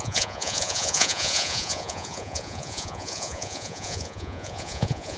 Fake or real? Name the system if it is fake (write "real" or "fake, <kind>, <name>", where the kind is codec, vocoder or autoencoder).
fake, vocoder, Vocos